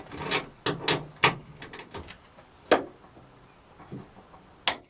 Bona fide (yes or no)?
yes